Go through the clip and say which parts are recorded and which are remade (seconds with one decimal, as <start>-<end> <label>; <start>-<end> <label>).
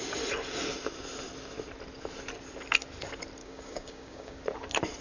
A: 0.0-3.4 recorded; 3.4-4.4 remade; 4.4-5.0 recorded